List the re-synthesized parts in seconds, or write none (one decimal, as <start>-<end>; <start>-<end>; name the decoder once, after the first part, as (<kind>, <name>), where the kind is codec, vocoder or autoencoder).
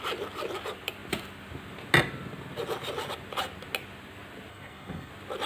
4.5-5.1 (codec, SNAC)